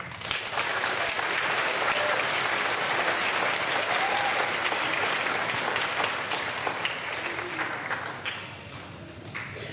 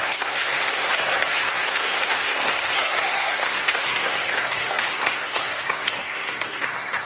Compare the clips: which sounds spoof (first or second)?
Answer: second